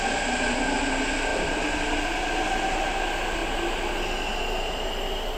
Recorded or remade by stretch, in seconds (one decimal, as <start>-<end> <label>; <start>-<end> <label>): 0.0-1.3 recorded; 1.3-1.9 remade; 1.9-5.4 recorded